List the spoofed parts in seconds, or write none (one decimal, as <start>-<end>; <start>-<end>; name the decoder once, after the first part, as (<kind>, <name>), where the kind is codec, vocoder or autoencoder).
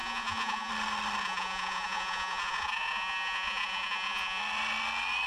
0.0-0.7 (vocoder, Vocos); 1.2-4.4